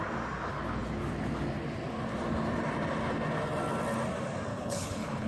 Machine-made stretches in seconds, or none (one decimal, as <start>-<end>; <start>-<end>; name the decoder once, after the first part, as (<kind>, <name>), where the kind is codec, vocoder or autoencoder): 4.5-5.3 (codec, HILCodec)